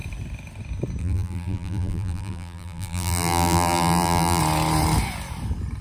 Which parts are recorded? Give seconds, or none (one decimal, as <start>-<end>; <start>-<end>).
0.0-1.0; 4.4-5.8